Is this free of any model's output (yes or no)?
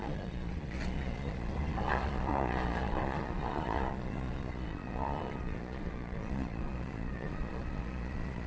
no